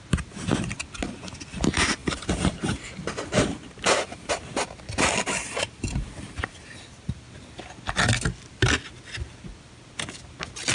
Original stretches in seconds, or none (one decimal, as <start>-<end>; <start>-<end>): 0.0-10.7